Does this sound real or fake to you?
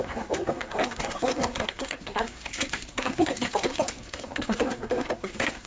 fake